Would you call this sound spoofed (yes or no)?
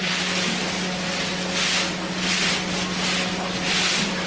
no